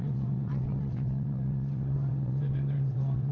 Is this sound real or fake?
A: fake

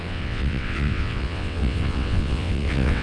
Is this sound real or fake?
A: fake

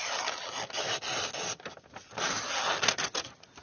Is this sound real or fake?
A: real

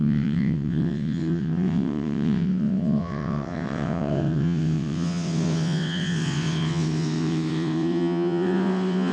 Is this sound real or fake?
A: fake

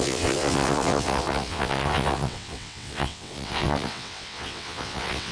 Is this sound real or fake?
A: fake